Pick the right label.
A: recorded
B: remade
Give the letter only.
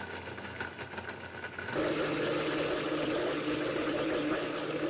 A